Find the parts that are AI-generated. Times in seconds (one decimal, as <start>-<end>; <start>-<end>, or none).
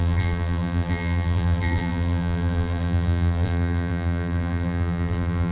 0.0-5.5